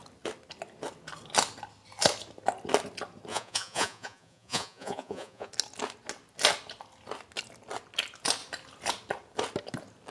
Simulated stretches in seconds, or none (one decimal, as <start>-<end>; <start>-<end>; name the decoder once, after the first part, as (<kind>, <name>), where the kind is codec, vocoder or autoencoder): 3.3-5.5 (vocoder, Vocos)